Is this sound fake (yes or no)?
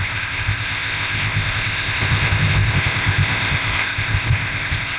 yes